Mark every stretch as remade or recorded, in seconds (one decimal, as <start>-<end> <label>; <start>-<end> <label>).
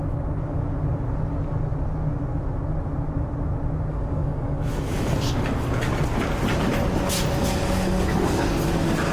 0.0-3.9 recorded; 3.9-5.9 remade; 5.9-7.4 recorded; 7.4-9.1 remade